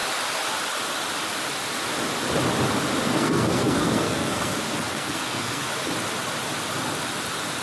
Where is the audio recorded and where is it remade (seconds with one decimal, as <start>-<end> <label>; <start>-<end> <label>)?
0.0-3.0 recorded; 3.0-5.6 remade; 5.6-7.6 recorded